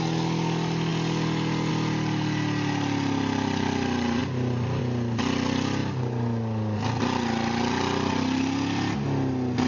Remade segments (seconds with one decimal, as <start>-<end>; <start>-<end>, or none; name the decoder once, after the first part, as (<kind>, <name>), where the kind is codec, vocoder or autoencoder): none